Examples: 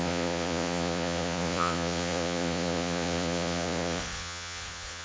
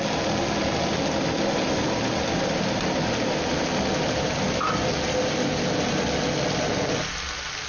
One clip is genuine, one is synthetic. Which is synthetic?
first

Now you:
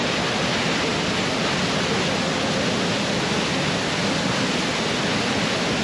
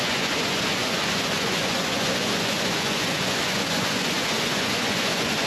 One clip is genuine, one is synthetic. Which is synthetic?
second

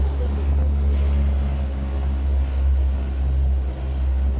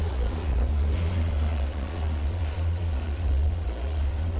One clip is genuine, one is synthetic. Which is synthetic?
second